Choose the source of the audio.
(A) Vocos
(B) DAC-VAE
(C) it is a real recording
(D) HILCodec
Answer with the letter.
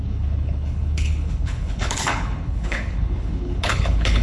D